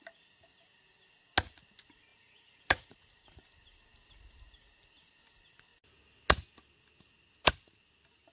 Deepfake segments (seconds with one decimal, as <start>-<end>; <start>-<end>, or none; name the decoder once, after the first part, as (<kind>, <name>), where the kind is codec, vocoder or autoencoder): 2.1-3.5 (vocoder, BigVGAN v2)